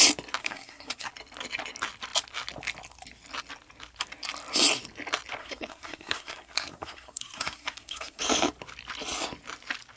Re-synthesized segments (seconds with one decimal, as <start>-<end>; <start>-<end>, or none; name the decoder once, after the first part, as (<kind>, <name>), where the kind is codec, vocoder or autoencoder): 0.4-1.1 (codec, SNAC); 5.4-8.2